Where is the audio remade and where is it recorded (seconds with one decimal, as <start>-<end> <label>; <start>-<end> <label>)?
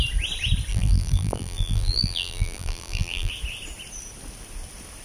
0.0-0.7 recorded; 0.7-3.3 remade; 3.3-5.0 recorded